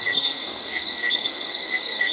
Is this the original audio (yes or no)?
no